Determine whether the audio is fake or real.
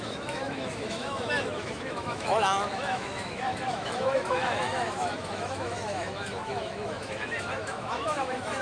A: fake